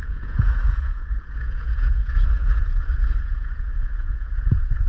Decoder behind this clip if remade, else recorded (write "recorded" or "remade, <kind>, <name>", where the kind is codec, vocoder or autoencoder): remade, vocoder, Vocos